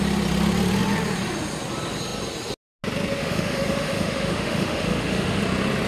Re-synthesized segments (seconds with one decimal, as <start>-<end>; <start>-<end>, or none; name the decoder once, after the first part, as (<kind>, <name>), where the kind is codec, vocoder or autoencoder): 3.2-5.4 (autoencoder, DAC-VAE)